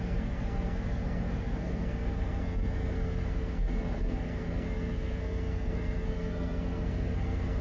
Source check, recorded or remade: remade